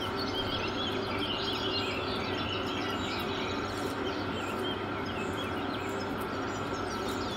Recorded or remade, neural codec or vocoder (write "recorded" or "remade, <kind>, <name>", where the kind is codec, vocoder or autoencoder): recorded